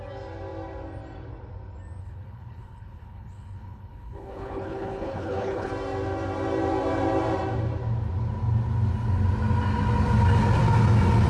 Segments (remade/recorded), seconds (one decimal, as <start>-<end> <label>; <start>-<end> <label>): 0.0-2.0 recorded; 2.0-5.7 remade; 5.7-11.3 recorded